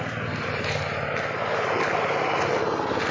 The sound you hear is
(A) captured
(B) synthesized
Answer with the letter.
A